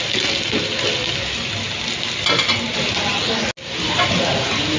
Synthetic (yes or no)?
no